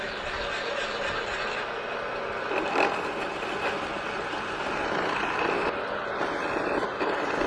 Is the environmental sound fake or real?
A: real